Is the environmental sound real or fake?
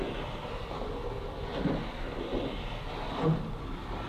real